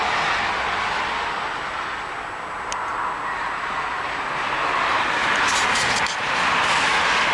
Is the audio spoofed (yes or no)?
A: no